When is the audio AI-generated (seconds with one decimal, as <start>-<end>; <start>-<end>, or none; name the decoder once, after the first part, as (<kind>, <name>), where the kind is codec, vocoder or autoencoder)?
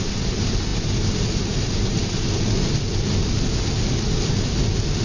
none